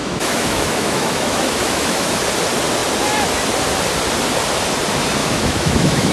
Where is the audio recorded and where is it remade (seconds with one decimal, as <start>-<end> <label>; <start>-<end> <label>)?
0.0-2.2 remade; 2.2-5.2 recorded; 5.2-6.1 remade